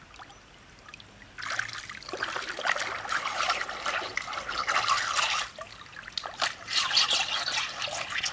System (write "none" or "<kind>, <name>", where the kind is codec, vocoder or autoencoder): none